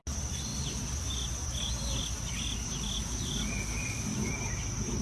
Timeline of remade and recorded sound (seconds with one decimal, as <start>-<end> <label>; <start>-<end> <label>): 0.0-5.0 recorded